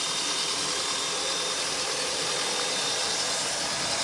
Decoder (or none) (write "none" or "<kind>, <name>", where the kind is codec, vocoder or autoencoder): none